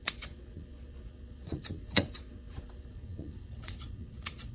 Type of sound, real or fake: fake